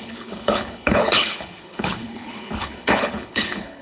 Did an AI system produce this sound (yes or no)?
yes